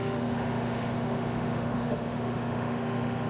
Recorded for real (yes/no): no